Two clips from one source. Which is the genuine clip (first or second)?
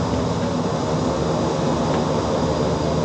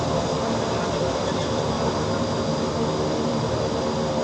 first